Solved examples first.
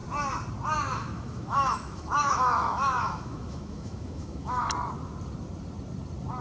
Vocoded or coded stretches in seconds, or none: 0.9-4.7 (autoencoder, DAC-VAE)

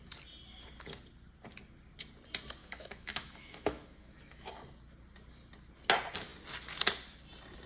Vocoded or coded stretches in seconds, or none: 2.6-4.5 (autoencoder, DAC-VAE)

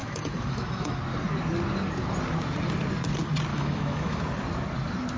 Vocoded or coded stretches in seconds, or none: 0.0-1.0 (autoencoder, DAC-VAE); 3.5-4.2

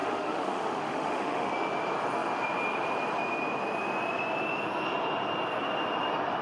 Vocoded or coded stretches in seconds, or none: 0.0-1.5 (autoencoder, DAC-VAE)